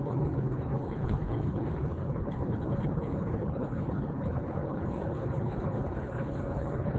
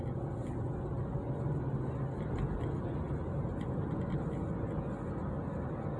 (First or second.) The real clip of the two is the second